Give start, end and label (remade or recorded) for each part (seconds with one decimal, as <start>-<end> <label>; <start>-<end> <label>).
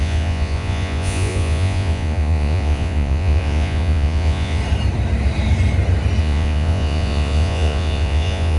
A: 0.0-4.6 remade; 4.6-6.2 recorded; 6.2-8.6 remade